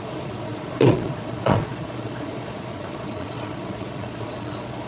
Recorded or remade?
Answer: remade